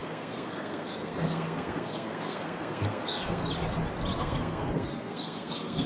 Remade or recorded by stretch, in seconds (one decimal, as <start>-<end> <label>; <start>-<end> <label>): 0.0-3.4 remade; 3.4-4.2 recorded; 4.2-5.9 remade